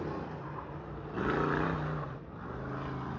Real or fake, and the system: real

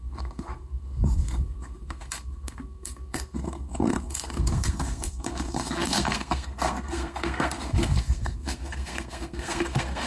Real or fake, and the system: fake, codec, SNAC